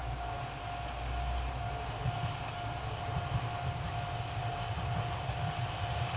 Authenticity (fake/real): real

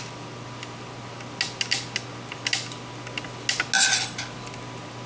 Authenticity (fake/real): real